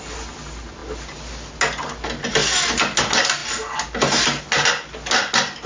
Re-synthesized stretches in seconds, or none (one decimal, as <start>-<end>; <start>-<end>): none